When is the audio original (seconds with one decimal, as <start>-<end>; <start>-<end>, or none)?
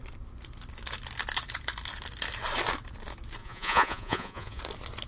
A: 0.0-3.4; 4.6-5.1